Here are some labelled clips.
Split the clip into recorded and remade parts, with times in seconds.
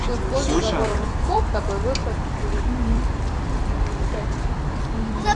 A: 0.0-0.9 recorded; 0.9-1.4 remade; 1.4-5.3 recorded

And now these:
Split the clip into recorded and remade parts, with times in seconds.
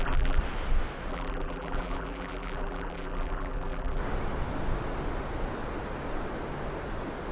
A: 0.0-0.4 remade; 0.4-1.1 recorded; 1.1-4.0 remade; 4.0-7.3 recorded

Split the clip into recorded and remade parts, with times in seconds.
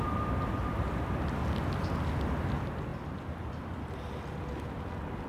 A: 0.0-5.3 recorded